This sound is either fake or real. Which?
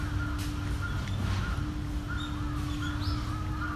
real